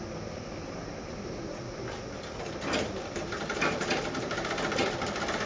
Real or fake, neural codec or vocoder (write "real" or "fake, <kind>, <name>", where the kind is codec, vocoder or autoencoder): real